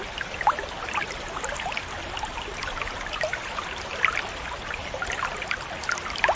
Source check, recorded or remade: recorded